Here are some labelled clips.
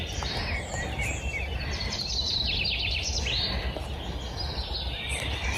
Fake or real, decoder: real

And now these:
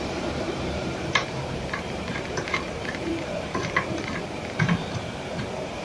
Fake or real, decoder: fake, vocoder, BigVGAN v2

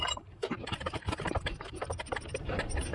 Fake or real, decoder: fake, vocoder, BigVGAN v2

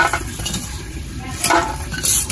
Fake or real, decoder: fake, vocoder, BigVGAN v2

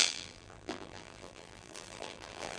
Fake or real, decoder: fake, vocoder, BigVGAN v2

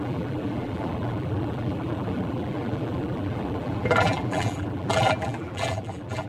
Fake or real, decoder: fake, vocoder, BigVGAN v2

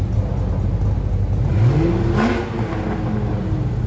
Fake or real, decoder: real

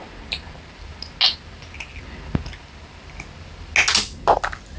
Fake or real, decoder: real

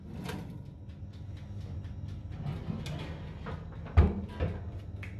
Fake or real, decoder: real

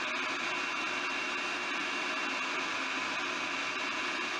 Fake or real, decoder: real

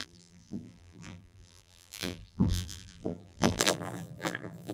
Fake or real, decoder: fake, vocoder, BigVGAN v2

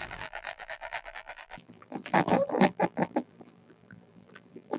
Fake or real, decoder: fake, vocoder, BigVGAN v2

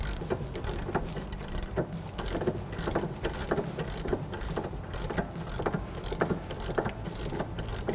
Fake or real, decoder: real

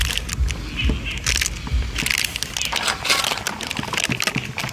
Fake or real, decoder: real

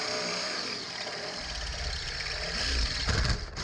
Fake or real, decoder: fake, vocoder, BigVGAN v2